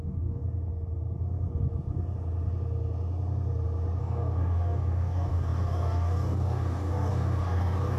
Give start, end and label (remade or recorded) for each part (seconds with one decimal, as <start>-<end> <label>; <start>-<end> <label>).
0.0-0.4 remade; 0.4-4.0 recorded; 4.0-8.0 remade